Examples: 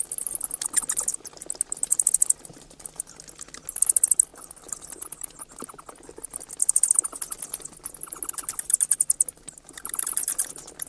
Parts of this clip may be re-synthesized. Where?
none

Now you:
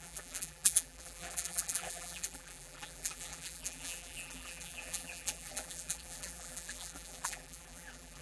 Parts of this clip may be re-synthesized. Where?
0.0-8.2 (vocoder, BigVGAN v2)

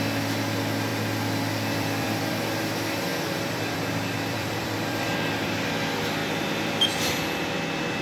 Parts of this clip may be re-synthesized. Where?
0.9-2.4 (vocoder, BigVGAN v2); 3.1-5.7; 6.2-8.0

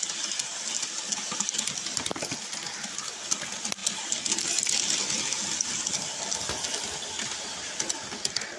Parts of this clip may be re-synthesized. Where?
none